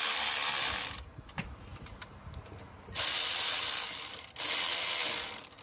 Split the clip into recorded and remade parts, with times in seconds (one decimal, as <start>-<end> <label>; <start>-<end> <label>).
0.0-5.6 recorded